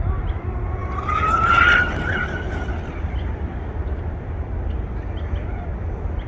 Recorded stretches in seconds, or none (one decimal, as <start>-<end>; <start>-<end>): 0.0-6.3